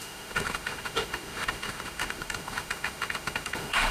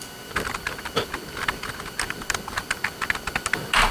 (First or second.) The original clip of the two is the second